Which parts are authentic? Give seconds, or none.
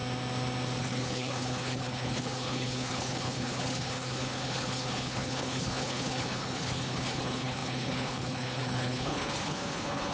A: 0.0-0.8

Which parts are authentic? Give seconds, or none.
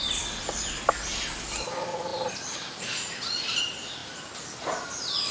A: 1.1-1.7; 4.0-4.6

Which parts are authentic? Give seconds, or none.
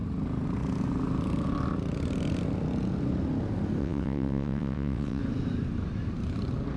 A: 0.0-3.8; 5.2-6.8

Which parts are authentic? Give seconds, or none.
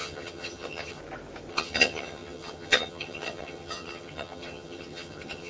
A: 1.0-1.5